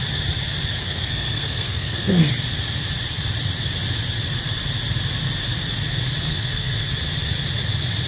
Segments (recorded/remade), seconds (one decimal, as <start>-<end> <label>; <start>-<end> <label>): 0.0-0.8 recorded; 0.8-2.3 remade; 2.3-6.3 recorded; 6.3-6.9 remade; 6.9-8.1 recorded